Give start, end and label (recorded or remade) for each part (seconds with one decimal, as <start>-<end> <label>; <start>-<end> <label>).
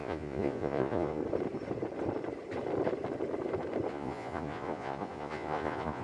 0.0-1.2 remade; 1.2-3.9 recorded; 3.9-6.0 remade